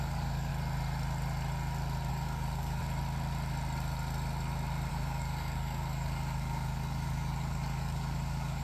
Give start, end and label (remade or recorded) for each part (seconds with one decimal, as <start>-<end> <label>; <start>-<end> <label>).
0.0-0.5 remade; 0.5-2.1 recorded; 2.1-2.8 remade; 2.8-4.9 recorded; 4.9-8.6 remade